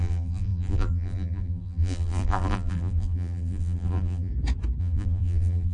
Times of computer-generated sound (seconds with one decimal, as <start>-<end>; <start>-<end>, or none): 0.0-4.3; 4.8-5.7